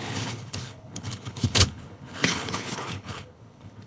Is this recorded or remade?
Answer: remade